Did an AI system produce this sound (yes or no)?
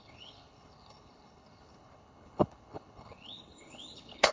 yes